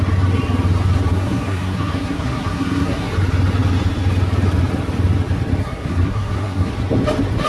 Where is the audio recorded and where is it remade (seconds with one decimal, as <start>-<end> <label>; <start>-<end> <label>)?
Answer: 0.0-1.1 recorded; 1.1-3.1 remade; 3.1-5.6 recorded; 5.6-6.7 remade; 6.7-7.5 recorded